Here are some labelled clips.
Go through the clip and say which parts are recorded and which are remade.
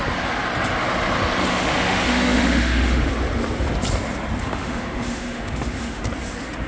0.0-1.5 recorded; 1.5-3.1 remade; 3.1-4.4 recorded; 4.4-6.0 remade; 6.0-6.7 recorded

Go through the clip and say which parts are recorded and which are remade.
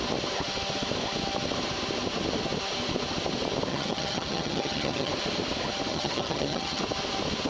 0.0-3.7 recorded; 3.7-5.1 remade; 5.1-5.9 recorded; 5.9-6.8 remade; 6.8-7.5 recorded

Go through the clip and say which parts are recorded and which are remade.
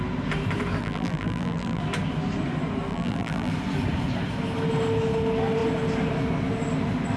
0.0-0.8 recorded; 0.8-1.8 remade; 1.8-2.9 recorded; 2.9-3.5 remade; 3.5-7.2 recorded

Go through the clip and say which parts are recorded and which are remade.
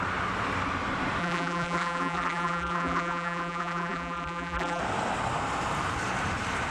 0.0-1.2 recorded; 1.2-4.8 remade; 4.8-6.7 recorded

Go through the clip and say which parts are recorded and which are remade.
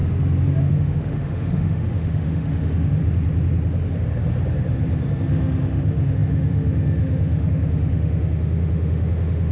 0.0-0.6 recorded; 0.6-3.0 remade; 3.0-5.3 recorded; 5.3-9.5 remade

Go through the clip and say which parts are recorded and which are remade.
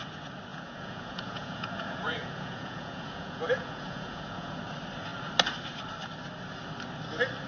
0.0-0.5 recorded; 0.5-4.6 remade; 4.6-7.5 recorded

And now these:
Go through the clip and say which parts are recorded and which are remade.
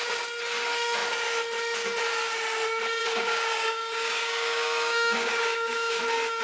0.0-3.0 recorded; 3.0-6.0 remade; 6.0-6.4 recorded